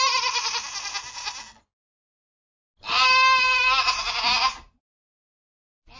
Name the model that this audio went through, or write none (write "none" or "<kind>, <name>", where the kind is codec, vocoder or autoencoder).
none